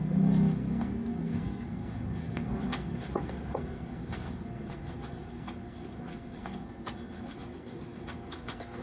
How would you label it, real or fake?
fake